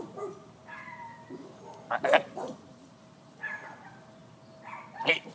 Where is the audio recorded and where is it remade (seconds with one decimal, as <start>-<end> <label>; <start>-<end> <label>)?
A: 0.0-5.3 recorded